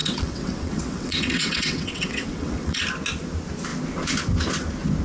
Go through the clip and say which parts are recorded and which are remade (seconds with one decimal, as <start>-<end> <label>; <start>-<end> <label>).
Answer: 0.0-2.8 remade; 2.8-5.0 recorded